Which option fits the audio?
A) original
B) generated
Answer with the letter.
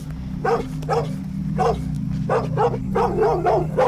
A